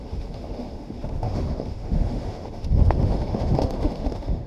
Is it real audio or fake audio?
fake